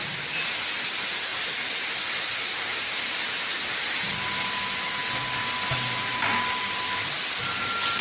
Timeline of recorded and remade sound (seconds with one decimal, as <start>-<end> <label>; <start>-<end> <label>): 0.0-0.8 remade; 0.8-1.3 recorded; 1.3-3.3 remade; 3.3-8.0 recorded